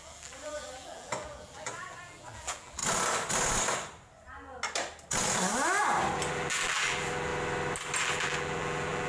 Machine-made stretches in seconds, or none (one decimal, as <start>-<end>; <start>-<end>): 0.0-2.8; 6.3-7.3; 8.0-9.1